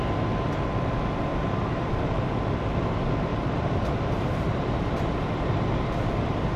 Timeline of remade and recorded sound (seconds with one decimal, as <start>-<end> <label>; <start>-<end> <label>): 0.0-1.3 recorded; 1.3-2.3 remade; 2.3-3.3 recorded; 3.3-5.0 remade; 5.0-6.6 recorded